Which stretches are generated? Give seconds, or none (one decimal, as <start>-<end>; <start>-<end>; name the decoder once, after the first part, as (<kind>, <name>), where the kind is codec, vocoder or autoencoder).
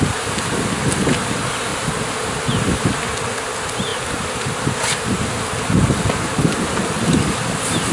none